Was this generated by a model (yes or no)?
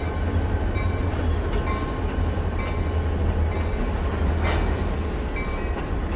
no